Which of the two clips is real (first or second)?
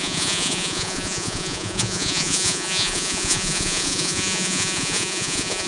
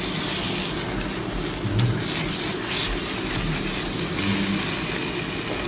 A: second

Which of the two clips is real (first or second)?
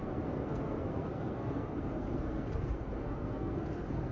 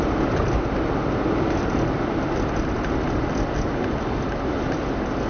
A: second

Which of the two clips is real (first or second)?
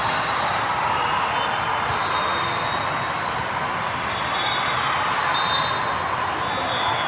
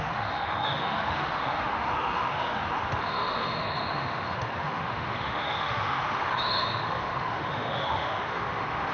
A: first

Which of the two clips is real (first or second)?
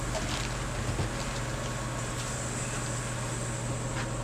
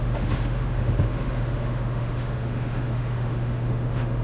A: first